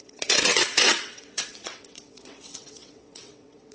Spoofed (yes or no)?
yes